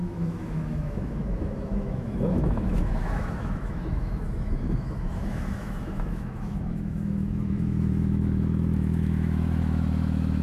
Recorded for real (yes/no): no